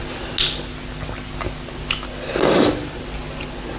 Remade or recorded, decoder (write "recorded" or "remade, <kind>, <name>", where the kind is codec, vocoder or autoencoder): recorded